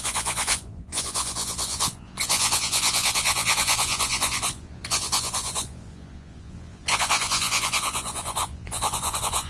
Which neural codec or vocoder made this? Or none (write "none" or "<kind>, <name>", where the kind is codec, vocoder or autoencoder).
vocoder, Vocos